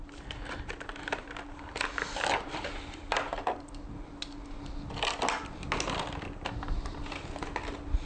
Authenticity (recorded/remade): recorded